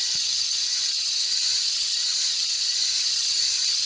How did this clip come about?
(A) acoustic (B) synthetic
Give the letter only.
B